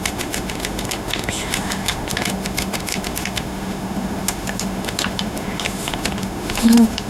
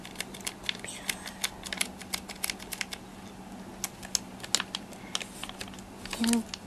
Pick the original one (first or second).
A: second